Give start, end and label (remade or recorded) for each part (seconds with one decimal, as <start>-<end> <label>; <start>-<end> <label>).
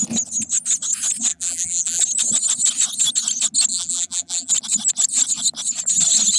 0.0-1.3 recorded; 1.3-2.0 remade; 2.0-3.7 recorded; 3.7-4.5 remade; 4.5-6.4 recorded